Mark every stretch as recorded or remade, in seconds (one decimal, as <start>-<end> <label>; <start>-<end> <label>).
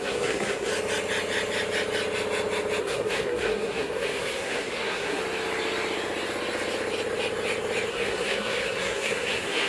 0.0-0.7 remade; 0.7-2.8 recorded; 2.8-5.2 remade; 5.2-7.9 recorded; 7.9-9.7 remade